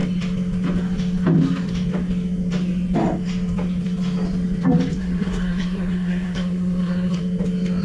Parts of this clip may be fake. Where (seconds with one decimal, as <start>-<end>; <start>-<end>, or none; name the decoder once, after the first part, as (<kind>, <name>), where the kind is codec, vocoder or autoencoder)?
5.0-7.2 (codec, SNAC)